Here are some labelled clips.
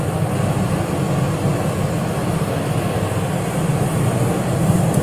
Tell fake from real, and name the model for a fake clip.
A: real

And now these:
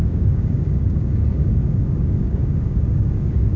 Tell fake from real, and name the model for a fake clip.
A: fake, codec, DAC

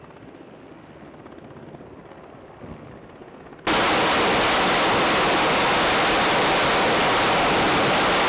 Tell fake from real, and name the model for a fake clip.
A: real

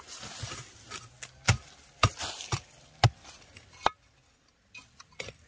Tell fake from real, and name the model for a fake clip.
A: real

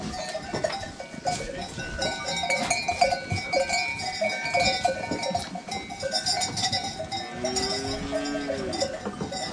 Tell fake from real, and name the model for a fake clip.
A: real